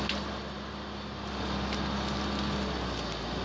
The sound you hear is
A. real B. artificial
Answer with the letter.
A